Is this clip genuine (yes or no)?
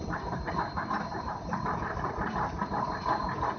no